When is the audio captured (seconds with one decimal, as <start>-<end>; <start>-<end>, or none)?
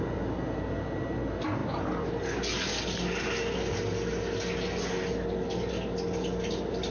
0.0-6.9